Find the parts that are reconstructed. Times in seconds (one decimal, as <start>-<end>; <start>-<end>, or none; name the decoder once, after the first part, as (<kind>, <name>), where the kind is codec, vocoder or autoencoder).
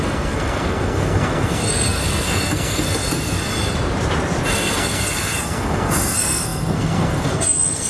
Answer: 0.0-3.4 (codec, SNAC); 4.5-7.9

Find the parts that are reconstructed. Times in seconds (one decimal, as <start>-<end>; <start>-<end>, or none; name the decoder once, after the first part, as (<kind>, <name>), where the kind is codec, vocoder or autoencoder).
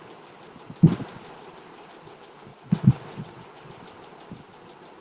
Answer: 2.5-3.7 (vocoder, WaveNeXt)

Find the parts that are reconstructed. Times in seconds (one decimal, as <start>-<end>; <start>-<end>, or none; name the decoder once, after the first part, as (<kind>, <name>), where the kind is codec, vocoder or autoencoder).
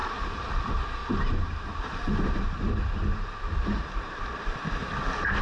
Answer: 0.0-0.5 (vocoder, BigVGAN v2); 1.0-4.2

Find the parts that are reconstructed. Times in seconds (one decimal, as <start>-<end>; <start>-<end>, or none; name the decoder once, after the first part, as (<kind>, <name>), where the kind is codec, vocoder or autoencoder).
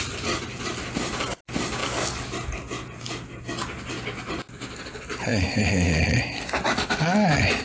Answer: none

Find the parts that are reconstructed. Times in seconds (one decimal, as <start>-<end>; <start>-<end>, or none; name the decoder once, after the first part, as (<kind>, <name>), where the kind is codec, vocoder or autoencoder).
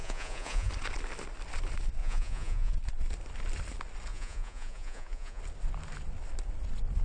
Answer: 0.0-0.7 (vocoder, Vocos); 2.0-2.7; 4.1-5.4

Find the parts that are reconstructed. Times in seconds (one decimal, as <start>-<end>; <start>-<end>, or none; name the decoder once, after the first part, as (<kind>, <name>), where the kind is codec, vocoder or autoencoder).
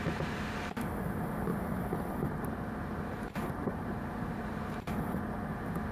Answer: 1.5-4.9 (vocoder, BigVGAN v2)